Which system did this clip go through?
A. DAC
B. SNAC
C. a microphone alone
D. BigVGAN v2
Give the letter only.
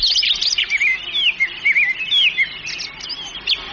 C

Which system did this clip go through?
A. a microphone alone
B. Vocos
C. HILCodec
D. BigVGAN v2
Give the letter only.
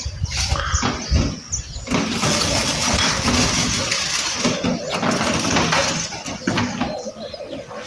A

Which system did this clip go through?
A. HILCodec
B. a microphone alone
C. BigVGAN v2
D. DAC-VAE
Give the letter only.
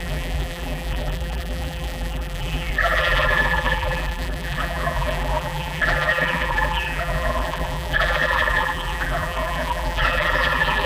C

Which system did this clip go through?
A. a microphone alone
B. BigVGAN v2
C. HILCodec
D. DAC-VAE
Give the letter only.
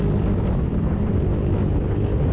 A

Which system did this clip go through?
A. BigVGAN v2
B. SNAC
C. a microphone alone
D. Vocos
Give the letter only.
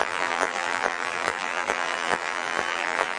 A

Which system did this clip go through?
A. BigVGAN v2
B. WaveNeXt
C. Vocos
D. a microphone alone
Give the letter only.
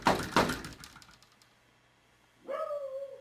D